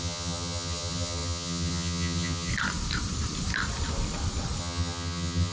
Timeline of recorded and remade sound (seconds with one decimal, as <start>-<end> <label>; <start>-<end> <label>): 0.0-2.5 remade; 2.5-4.6 recorded; 4.6-5.5 remade

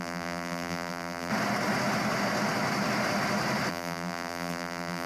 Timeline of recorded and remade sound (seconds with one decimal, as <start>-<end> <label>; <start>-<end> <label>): 0.0-1.3 remade; 1.3-3.7 recorded; 3.7-5.1 remade

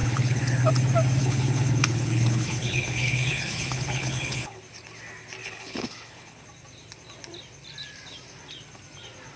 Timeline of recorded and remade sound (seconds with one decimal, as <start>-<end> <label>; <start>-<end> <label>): 0.0-0.7 remade; 0.7-1.2 recorded; 1.2-4.6 remade; 4.6-5.4 recorded; 5.4-6.4 remade; 6.4-9.4 recorded

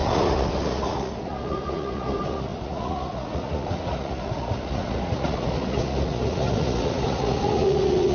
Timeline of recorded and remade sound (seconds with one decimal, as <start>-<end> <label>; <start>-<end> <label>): 0.0-8.1 remade